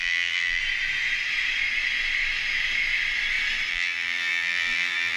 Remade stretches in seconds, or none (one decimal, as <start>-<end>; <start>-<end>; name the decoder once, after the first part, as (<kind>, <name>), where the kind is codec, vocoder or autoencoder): 0.0-0.6 (vocoder, BigVGAN v2); 3.7-5.2